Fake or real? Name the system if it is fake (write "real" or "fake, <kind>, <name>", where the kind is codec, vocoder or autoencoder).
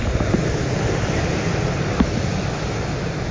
real